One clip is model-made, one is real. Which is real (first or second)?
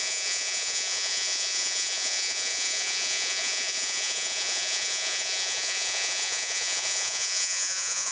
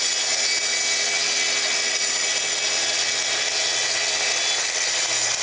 second